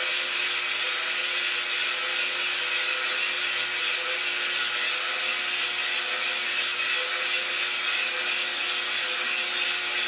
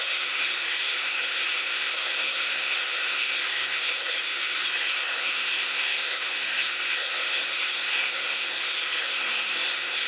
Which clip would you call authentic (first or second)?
first